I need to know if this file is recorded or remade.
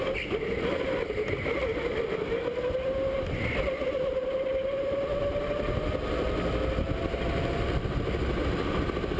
recorded